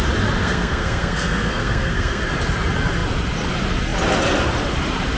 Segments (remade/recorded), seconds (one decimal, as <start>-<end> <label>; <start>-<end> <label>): 0.0-0.4 recorded; 0.4-2.2 remade; 2.2-5.2 recorded